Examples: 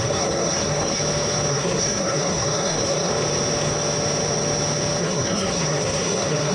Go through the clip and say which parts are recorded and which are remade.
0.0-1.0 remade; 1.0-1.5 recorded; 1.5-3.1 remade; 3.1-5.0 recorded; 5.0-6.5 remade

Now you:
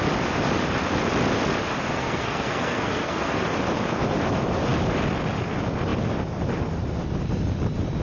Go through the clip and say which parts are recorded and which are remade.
0.0-1.9 recorded; 1.9-3.4 remade; 3.4-8.0 recorded